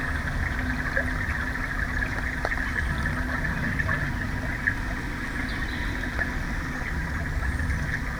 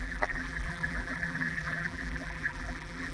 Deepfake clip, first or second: second